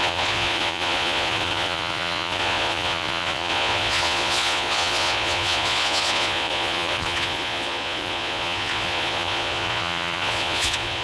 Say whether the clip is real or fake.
fake